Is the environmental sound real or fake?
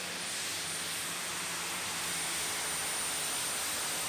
real